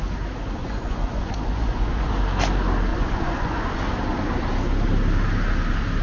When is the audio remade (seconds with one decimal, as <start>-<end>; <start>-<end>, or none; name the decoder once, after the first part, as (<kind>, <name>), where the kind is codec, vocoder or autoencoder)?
0.6-2.1 (vocoder, Vocos); 2.9-3.8